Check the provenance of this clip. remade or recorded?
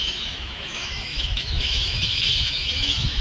remade